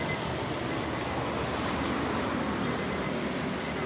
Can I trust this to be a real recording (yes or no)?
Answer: yes